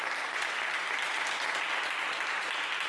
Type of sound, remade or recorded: recorded